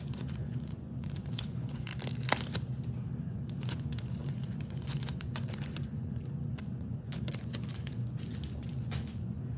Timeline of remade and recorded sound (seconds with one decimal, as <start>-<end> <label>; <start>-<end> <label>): 0.0-1.9 remade; 1.9-3.2 recorded; 3.2-9.6 remade